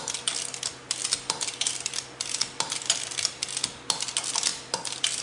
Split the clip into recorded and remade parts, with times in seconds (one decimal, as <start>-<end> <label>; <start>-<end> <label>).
0.0-4.5 recorded; 4.5-5.2 remade